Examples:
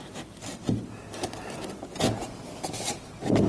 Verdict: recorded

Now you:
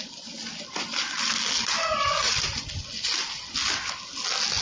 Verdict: recorded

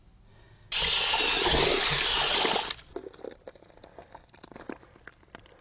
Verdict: recorded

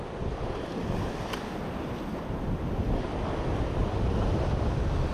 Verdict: recorded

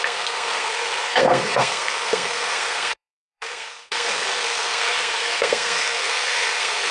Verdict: remade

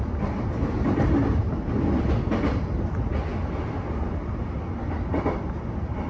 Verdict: recorded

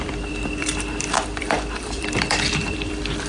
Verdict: remade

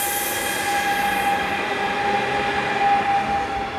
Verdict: recorded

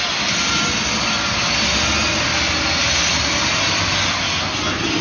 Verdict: recorded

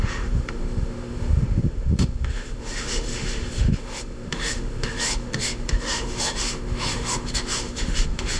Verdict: remade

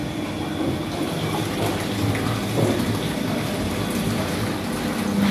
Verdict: recorded